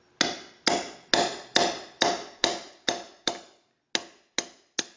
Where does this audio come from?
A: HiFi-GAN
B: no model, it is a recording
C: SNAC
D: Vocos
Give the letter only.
B